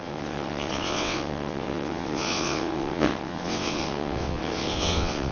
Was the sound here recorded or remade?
remade